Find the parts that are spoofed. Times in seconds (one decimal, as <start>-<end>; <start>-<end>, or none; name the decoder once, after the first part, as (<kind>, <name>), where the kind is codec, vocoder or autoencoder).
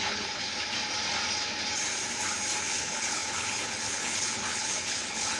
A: 0.0-0.5 (codec, HILCodec); 2.6-5.4